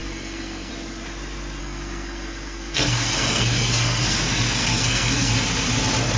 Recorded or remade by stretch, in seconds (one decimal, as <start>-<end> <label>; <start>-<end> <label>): 0.0-0.7 remade; 0.7-1.6 recorded; 1.6-5.3 remade; 5.3-6.2 recorded

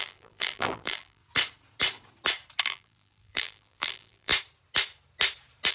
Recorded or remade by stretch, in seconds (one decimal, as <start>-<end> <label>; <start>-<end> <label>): 0.0-1.2 remade; 1.2-2.6 recorded; 2.6-4.3 remade; 4.3-5.7 recorded

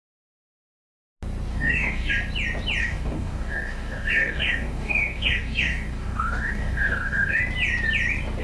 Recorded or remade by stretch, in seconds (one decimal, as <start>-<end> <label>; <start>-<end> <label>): 0.0-1.5 recorded; 1.5-2.1 remade; 2.1-2.8 recorded; 2.8-7.4 remade; 7.4-8.4 recorded